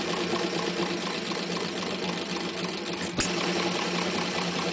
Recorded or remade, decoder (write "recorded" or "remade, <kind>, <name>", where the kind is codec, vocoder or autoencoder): recorded